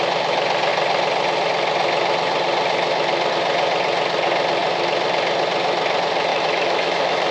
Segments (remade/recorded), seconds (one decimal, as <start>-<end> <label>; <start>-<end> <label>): 0.0-6.3 recorded; 6.3-7.3 remade